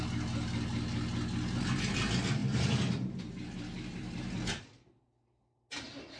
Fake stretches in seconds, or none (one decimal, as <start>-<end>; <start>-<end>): 2.4-4.4